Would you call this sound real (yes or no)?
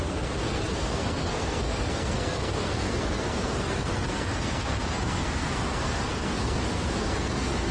no